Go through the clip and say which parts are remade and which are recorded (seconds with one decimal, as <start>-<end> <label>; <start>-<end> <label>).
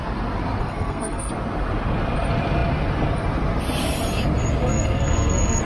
0.0-0.6 recorded; 0.6-1.3 remade; 1.3-4.6 recorded; 4.6-5.6 remade